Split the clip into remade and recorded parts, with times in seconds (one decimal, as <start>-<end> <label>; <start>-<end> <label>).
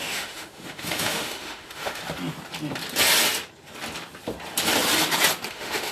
0.0-2.0 remade; 2.0-5.5 recorded; 5.5-5.9 remade